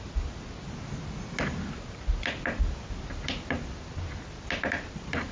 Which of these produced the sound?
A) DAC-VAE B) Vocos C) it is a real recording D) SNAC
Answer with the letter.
C